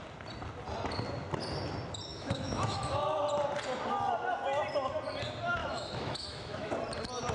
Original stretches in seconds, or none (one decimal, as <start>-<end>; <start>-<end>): 0.0-2.1; 2.8-5.6; 6.7-7.3